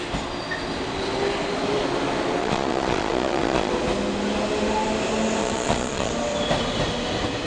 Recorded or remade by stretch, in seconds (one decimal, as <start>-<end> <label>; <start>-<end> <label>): 0.0-2.4 recorded; 2.4-3.7 remade; 3.7-5.4 recorded; 5.4-6.1 remade; 6.1-7.5 recorded

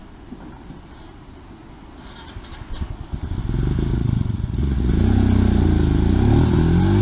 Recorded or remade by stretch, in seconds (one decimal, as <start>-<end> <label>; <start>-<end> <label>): 0.0-3.9 recorded; 3.9-4.9 remade; 4.9-7.0 recorded

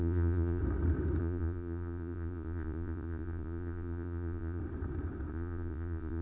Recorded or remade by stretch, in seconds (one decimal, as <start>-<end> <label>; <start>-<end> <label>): 0.0-0.6 remade; 0.6-1.2 recorded; 1.2-4.6 remade; 4.6-5.3 recorded; 5.3-6.2 remade

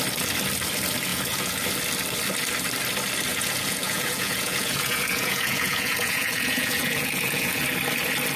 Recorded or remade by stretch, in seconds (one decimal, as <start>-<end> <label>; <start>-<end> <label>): 0.0-1.1 recorded; 1.1-1.6 remade; 1.6-3.3 recorded; 3.3-7.6 remade; 7.6-8.4 recorded